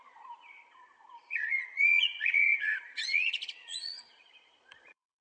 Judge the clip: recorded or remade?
remade